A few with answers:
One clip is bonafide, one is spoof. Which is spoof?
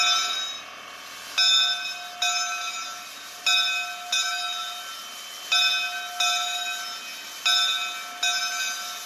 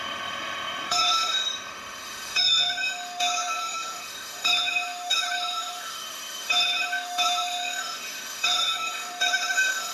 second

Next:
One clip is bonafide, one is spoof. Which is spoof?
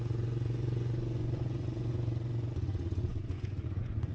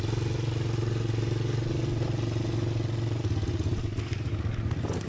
first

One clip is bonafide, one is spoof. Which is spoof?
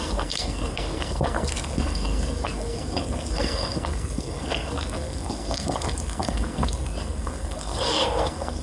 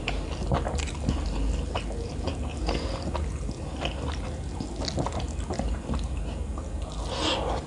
first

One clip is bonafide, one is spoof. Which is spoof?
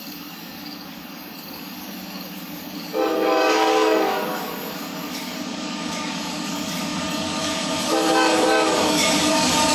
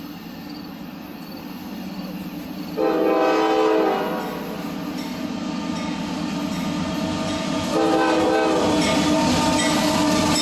first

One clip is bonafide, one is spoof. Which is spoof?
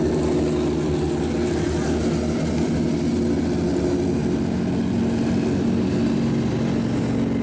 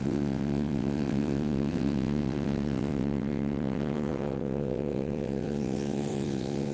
second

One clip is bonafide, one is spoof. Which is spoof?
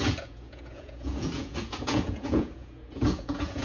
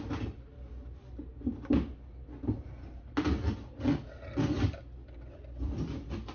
first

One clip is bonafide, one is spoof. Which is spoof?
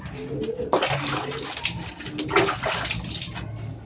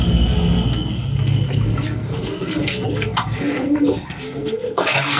second